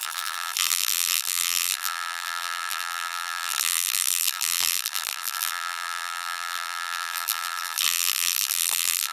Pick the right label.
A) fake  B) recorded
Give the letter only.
A